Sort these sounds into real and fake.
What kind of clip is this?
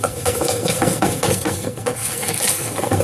fake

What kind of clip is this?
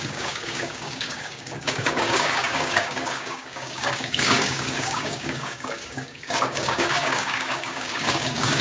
fake